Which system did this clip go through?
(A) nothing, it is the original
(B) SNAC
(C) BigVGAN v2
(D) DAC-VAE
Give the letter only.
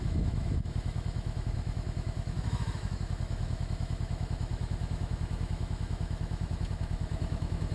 D